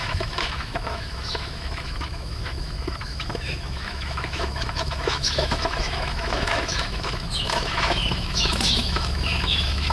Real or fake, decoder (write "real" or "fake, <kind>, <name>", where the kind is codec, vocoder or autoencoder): fake, autoencoder, DAC-VAE